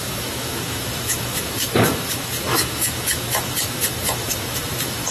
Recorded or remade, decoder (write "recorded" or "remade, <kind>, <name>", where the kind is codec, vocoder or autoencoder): remade, autoencoder, DAC-VAE